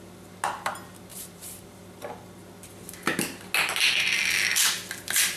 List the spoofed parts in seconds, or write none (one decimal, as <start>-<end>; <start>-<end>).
1.1-1.8